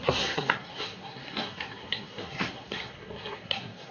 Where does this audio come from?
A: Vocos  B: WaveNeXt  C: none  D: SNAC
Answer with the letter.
D